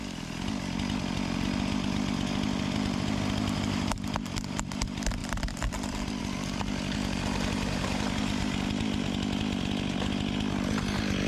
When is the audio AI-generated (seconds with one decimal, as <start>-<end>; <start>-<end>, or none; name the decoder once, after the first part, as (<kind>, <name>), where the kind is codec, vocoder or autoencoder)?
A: 5.2-6.2 (vocoder, BigVGAN v2)